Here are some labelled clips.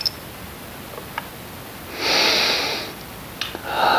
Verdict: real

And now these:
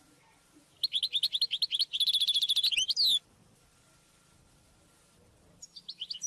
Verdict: real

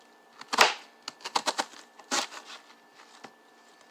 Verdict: real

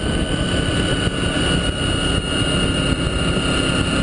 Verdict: real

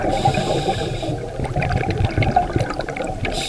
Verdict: fake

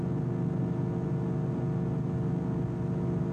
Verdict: real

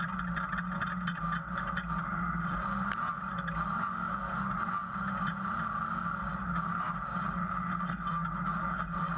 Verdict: real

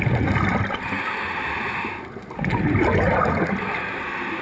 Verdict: real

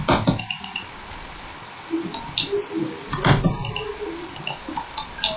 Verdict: real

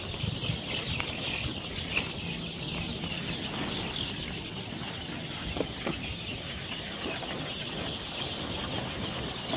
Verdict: real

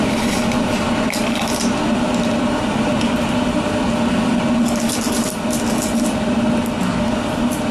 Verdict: real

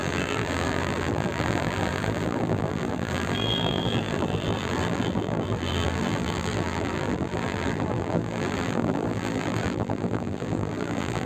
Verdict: fake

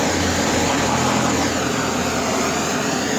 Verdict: real